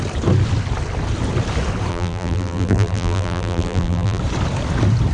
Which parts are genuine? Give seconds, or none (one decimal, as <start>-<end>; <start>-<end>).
0.0-1.9; 4.2-5.1